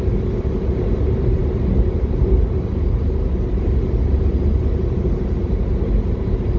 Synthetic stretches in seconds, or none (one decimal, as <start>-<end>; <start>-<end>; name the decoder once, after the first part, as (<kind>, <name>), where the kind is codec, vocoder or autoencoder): none